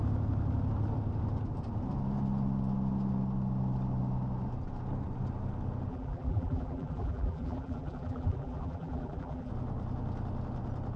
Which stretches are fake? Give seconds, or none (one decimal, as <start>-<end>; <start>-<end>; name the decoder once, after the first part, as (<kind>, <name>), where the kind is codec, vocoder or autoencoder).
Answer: 5.9-9.5 (vocoder, BigVGAN v2)